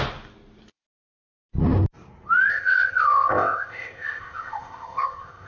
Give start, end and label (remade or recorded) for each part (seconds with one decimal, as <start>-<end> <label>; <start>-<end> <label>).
0.0-2.5 recorded; 2.5-5.5 remade